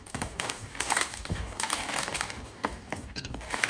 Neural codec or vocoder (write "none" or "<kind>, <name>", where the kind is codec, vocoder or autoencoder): codec, DAC